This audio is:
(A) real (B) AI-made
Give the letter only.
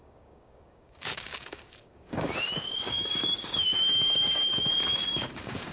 B